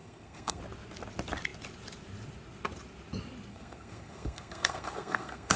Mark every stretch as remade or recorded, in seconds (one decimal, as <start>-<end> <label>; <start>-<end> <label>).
0.0-0.6 remade; 0.6-3.5 recorded; 3.5-5.6 remade